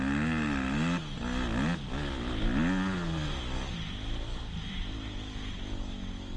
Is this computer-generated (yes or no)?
no